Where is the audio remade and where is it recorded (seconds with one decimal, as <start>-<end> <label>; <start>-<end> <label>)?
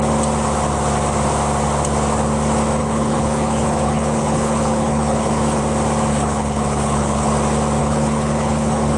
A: 0.0-2.8 recorded; 2.8-5.6 remade; 5.6-6.1 recorded; 6.1-7.3 remade; 7.3-7.8 recorded; 7.8-9.0 remade